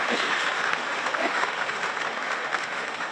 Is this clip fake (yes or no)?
yes